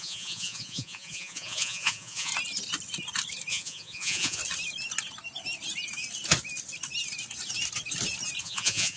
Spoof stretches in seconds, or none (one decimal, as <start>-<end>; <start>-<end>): 0.0-2.3; 3.5-4.4; 8.4-9.0